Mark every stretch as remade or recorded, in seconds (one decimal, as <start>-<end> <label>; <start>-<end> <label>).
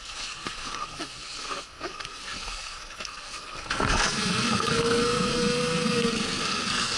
0.0-7.0 remade